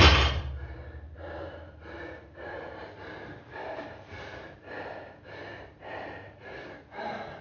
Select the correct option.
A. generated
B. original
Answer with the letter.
A